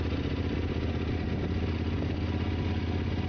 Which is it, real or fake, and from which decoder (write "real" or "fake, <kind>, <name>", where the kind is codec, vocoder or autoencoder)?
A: real